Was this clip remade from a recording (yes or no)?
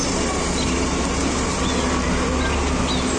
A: no